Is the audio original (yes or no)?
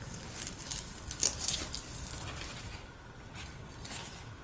no